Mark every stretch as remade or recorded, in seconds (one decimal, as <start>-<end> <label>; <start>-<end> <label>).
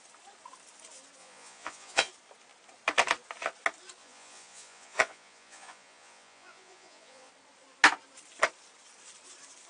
0.0-1.2 recorded; 1.2-2.1 remade; 2.1-4.0 recorded; 4.0-7.3 remade; 7.3-9.7 recorded